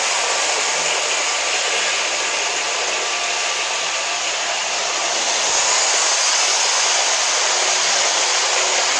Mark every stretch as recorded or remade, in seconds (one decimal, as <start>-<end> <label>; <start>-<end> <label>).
0.0-6.5 recorded; 6.5-7.0 remade; 7.0-9.0 recorded